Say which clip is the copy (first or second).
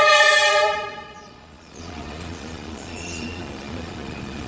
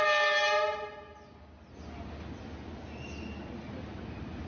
first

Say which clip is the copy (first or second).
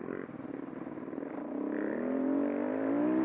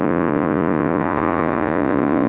second